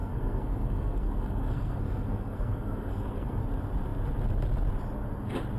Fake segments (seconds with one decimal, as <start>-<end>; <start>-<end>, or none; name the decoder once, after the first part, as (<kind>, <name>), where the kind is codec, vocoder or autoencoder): 0.0-3.4 (codec, SNAC)